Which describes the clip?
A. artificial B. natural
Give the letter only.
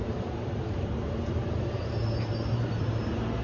A